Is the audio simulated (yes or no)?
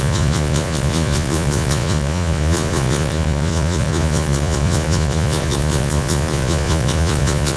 yes